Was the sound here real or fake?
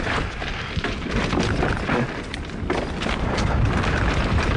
real